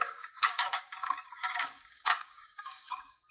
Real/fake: fake